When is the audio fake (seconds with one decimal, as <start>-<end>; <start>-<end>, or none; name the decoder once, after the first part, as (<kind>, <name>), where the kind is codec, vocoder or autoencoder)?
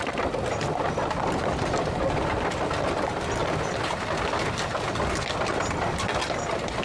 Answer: none